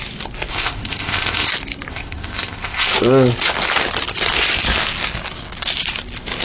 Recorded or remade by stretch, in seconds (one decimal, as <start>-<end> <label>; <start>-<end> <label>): 0.0-0.5 recorded; 0.5-1.5 remade; 1.5-1.9 recorded; 1.9-2.9 remade; 2.9-6.4 recorded